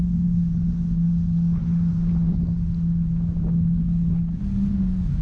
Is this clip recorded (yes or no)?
yes